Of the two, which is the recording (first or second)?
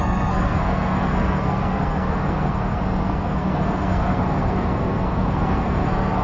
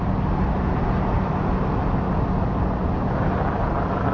second